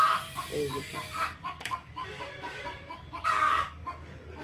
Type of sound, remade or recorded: remade